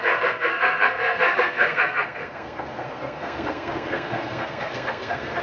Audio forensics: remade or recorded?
remade